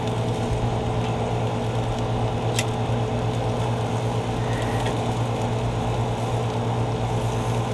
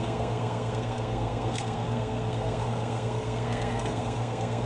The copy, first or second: second